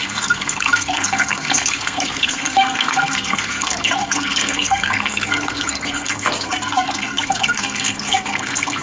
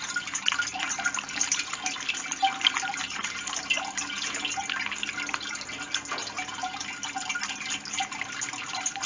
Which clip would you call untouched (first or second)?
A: second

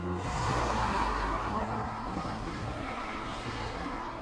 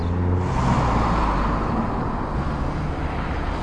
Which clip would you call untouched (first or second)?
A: second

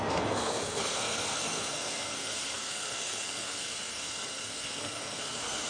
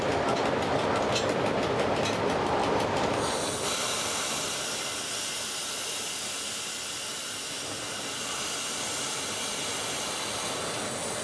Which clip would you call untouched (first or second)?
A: second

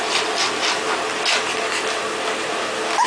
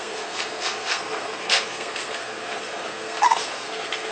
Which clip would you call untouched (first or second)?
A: first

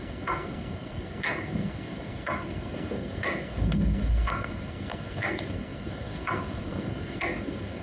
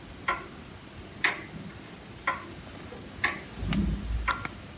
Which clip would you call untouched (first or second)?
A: second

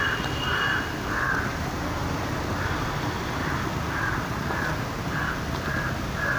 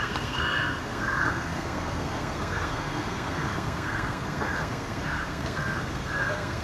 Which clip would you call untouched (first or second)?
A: first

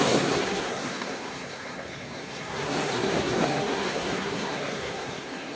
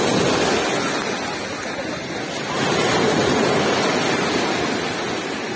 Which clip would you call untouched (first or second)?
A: second